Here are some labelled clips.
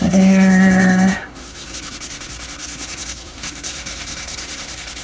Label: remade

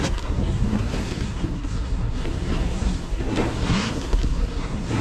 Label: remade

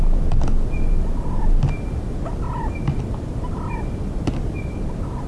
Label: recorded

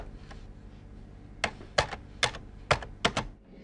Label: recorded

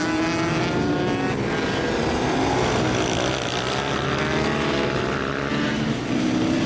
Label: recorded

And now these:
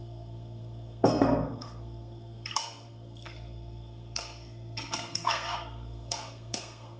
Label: remade